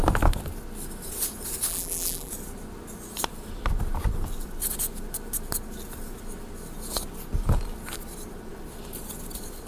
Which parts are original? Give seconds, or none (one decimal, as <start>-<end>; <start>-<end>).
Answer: 0.0-1.7; 2.3-9.7